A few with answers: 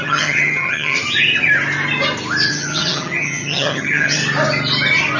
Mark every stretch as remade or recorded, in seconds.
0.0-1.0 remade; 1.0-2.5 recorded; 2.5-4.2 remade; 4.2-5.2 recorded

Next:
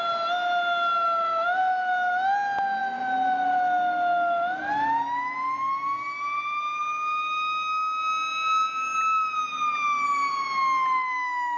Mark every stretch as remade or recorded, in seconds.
0.0-11.6 recorded

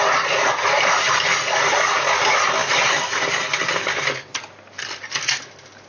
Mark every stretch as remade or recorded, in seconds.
0.0-5.9 recorded

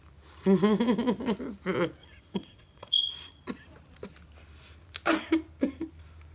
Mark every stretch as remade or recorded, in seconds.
0.0-2.0 recorded; 2.0-2.9 remade; 2.9-6.3 recorded

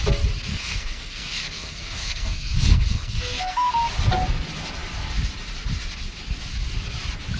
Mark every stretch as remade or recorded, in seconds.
0.0-0.5 recorded; 0.5-3.7 remade; 3.7-7.4 recorded

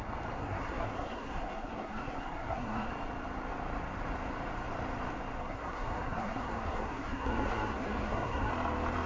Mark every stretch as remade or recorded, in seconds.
0.0-0.4 recorded; 0.4-2.9 remade; 2.9-5.4 recorded; 5.4-8.5 remade; 8.5-9.1 recorded

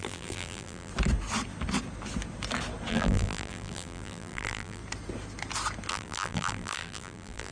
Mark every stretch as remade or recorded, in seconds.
0.0-0.9 remade; 0.9-2.9 recorded; 2.9-4.8 remade; 4.8-5.9 recorded; 5.9-7.5 remade